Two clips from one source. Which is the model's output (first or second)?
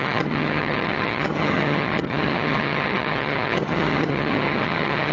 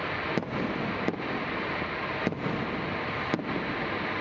first